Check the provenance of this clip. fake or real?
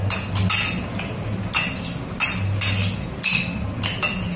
real